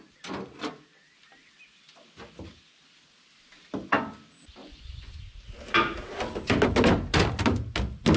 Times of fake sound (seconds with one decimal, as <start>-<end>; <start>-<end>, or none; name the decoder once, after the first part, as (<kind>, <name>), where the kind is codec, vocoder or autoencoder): 4.6-5.2 (vocoder, Vocos)